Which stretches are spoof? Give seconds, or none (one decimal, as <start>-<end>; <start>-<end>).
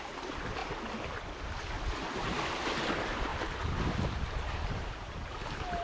0.0-0.6; 2.9-3.3; 3.9-5.8